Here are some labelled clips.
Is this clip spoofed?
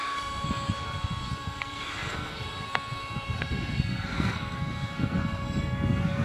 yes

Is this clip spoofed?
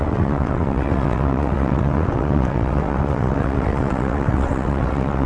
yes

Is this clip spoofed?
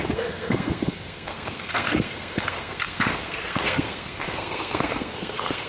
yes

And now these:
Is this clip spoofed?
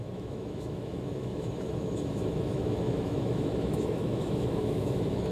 yes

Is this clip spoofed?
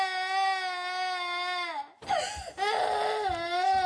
no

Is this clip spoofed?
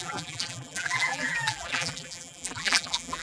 yes